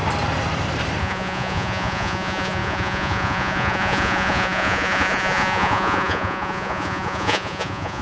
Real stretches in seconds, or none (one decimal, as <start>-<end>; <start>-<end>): 0.0-1.0